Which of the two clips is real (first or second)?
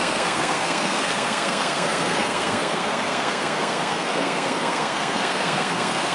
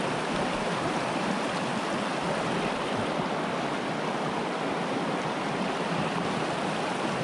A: second